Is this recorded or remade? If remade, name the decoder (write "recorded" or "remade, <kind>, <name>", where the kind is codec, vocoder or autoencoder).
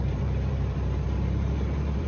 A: remade, vocoder, BigVGAN v2